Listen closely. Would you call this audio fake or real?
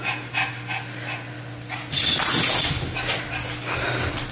real